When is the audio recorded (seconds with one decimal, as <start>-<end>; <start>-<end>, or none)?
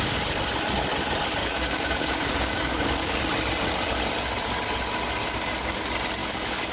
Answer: 0.0-1.4; 3.2-5.2; 5.8-6.2